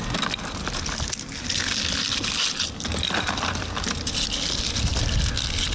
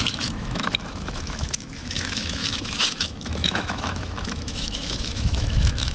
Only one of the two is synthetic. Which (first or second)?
second